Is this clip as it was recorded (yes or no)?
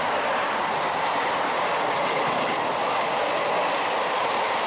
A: yes